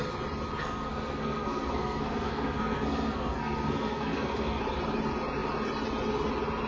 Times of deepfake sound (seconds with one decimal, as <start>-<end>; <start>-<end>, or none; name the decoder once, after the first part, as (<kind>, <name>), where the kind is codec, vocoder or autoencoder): 0.6-4.6 (codec, SNAC)

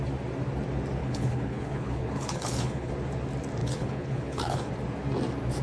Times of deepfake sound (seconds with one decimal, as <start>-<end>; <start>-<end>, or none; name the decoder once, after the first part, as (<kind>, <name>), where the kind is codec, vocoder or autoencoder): 1.0-2.9 (codec, HILCodec); 3.6-4.7

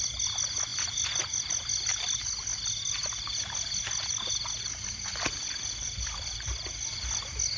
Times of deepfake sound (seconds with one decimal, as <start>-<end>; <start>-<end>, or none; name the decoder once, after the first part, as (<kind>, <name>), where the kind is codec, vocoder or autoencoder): 0.7-1.2 (vocoder, BigVGAN v2); 5.4-6.7

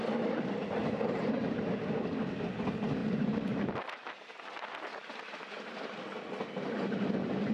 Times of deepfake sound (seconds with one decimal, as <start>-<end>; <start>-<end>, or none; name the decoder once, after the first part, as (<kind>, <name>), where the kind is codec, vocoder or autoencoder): 0.8-1.3 (vocoder, BigVGAN v2); 3.0-3.8

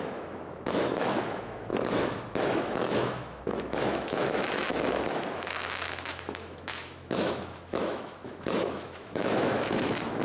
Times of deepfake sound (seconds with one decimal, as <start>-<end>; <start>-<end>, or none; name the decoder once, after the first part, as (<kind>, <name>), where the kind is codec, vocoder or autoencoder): 0.0-10.2 (autoencoder, DAC-VAE)

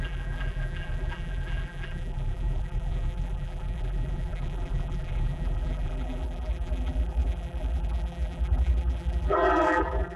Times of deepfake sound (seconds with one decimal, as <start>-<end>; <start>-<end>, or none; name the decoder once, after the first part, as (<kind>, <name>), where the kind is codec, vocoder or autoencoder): 0.0-10.2 (vocoder, BigVGAN v2)

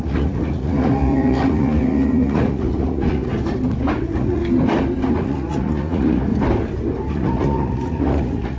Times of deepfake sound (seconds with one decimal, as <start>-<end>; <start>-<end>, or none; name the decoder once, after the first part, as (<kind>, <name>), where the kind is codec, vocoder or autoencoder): 0.0-3.3 (vocoder, Vocos); 4.0-4.4; 5.1-6.3; 7.1-8.6